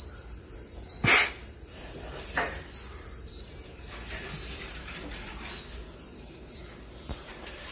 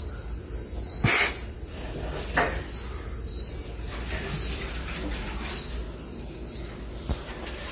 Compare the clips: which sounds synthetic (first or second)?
first